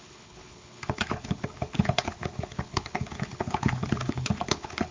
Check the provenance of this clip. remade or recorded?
remade